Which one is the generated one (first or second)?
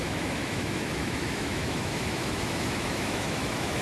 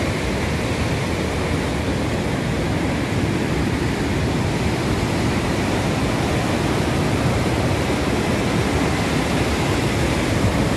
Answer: first